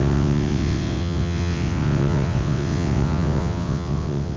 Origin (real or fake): fake